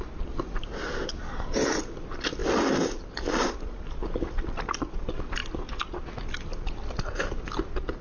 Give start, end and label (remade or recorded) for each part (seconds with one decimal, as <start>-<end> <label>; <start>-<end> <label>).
0.0-6.5 recorded; 6.5-7.2 remade; 7.2-8.0 recorded

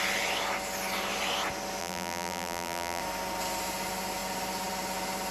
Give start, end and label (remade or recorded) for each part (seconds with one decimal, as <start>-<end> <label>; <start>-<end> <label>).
0.0-1.8 recorded; 1.8-3.0 remade; 3.0-5.3 recorded

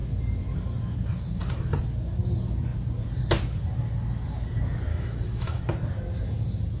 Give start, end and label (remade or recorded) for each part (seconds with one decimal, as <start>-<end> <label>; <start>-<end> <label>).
0.0-4.9 recorded; 4.9-5.6 remade; 5.6-6.8 recorded

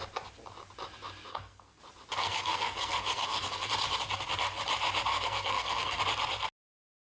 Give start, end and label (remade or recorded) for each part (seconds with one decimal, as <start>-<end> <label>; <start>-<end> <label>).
0.0-1.3 recorded; 1.3-1.8 remade; 1.8-2.2 recorded; 2.2-3.7 remade; 3.7-5.1 recorded; 5.1-6.0 remade; 6.0-7.2 recorded

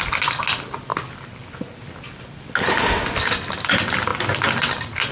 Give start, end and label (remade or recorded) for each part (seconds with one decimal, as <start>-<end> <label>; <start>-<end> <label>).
0.0-5.1 recorded